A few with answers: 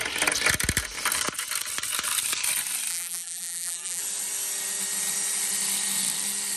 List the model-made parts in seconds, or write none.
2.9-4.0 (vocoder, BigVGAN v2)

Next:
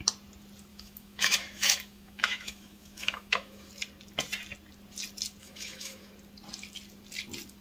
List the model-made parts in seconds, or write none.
0.7-3.7 (autoencoder, DAC-VAE); 5.4-6.1

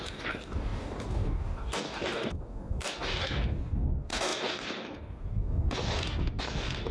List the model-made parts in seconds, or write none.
0.0-6.9 (codec, DAC)

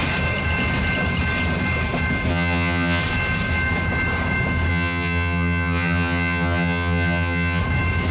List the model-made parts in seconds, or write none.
2.3-3.0 (vocoder, HiFi-GAN); 4.7-7.6